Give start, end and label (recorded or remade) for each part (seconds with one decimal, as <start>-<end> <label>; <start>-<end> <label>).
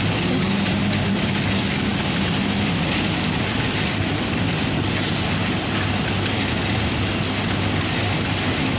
0.0-8.8 recorded